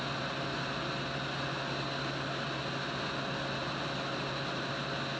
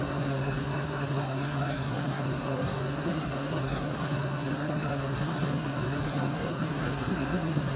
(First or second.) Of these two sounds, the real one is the first